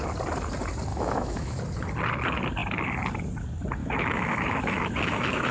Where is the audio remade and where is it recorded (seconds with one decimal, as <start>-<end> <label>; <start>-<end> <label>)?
0.0-0.9 recorded; 0.9-1.6 remade; 1.6-3.8 recorded; 3.8-5.5 remade

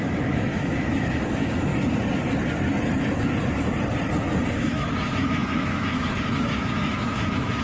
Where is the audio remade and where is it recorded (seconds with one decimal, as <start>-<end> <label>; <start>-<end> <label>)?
0.0-1.7 remade; 1.7-4.5 recorded; 4.5-7.6 remade